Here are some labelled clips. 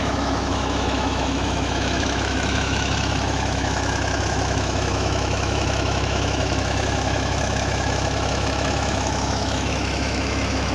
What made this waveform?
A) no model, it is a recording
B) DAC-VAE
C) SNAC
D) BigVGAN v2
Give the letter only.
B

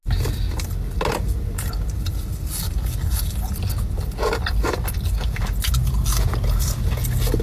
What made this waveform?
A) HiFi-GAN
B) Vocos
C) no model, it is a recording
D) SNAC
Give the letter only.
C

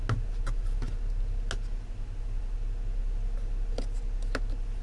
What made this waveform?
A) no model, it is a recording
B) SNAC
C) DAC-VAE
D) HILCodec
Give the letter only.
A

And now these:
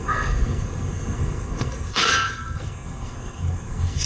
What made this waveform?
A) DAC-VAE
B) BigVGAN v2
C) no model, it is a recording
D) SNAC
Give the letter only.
D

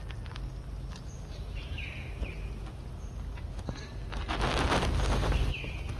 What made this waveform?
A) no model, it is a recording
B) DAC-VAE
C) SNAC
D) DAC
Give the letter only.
A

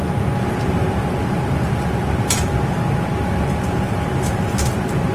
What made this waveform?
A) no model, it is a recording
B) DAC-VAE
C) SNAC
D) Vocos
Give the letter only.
A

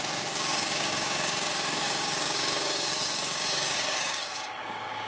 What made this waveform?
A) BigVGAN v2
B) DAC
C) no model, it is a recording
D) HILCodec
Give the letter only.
B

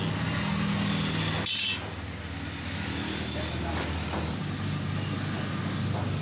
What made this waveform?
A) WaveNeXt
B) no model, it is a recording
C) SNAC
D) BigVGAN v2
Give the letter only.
B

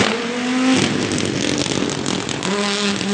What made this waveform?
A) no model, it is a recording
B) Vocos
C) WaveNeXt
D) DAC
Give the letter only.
A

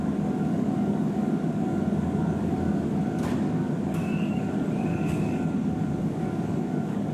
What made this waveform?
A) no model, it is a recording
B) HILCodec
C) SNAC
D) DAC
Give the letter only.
D